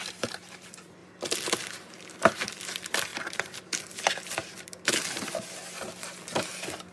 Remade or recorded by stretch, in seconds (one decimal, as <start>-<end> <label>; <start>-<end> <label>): 0.0-6.9 recorded